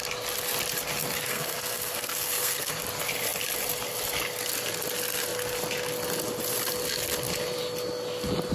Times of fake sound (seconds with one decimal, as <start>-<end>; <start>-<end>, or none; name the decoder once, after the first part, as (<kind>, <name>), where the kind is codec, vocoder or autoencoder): 1.3-2.7 (codec, SNAC)